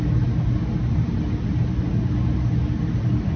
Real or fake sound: real